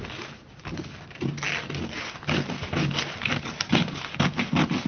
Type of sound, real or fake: real